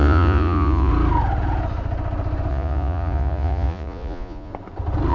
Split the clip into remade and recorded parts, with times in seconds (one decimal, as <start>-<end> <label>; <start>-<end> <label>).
0.0-0.9 remade; 0.9-2.5 recorded; 2.5-4.5 remade; 4.5-5.1 recorded